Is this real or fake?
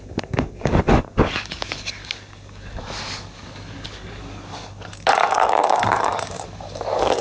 fake